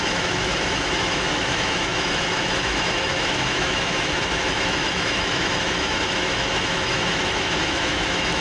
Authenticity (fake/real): fake